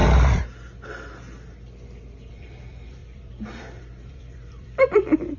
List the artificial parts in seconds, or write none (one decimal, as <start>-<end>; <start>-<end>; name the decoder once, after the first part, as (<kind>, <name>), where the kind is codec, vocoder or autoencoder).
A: 2.3-5.4 (vocoder, BigVGAN v2)